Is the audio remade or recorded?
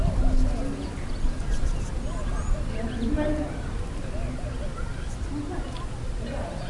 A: recorded